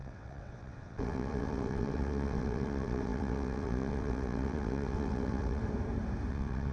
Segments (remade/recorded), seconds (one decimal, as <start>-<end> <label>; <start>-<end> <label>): 0.0-5.6 remade; 5.6-6.3 recorded; 6.3-6.7 remade